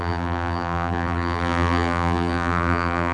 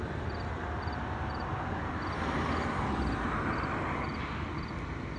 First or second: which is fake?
first